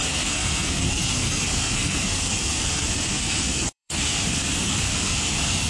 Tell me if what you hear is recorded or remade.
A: remade